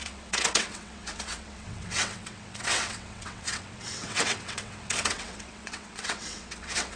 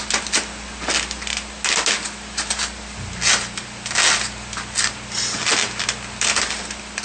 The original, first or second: second